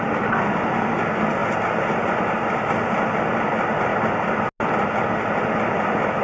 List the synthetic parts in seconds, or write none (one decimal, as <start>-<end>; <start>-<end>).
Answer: none